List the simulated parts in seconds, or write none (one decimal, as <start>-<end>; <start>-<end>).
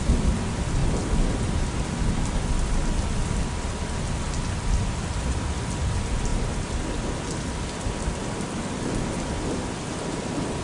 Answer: none